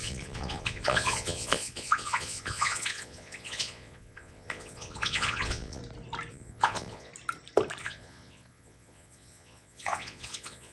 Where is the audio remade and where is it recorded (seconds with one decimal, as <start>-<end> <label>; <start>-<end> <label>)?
0.0-5.8 remade; 5.8-6.3 recorded; 6.3-7.1 remade; 7.1-7.8 recorded; 7.8-10.7 remade